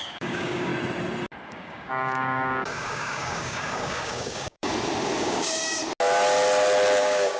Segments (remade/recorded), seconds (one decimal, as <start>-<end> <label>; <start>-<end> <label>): 0.0-0.7 remade; 0.7-1.5 recorded; 1.5-4.7 remade; 4.7-5.2 recorded; 5.2-5.8 remade; 5.8-7.0 recorded; 7.0-7.4 remade